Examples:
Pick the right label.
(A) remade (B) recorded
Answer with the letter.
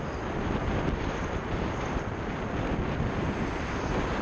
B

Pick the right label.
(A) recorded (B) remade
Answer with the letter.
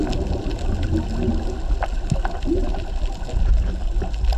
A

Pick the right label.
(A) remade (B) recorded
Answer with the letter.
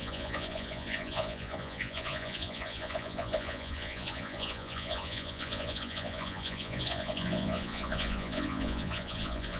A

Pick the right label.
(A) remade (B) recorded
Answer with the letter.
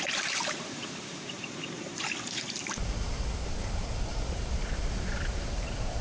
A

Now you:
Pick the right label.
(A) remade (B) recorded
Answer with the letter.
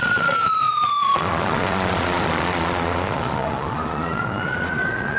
A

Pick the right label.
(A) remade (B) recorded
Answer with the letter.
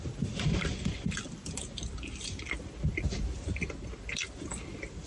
B